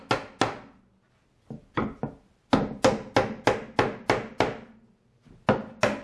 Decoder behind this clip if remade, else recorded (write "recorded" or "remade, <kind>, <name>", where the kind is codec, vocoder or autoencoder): recorded